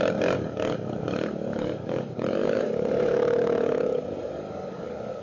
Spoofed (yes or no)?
yes